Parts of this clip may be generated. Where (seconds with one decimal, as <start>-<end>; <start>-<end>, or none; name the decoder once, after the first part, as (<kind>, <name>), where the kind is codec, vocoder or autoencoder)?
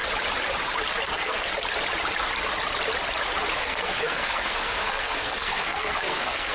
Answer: 1.1-1.5 (codec, SNAC); 3.6-6.5